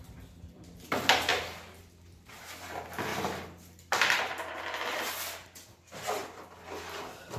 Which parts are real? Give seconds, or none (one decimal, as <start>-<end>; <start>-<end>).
1.3-2.3; 3.1-4.5